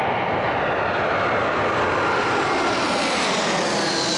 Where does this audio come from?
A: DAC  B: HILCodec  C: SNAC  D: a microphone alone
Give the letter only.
D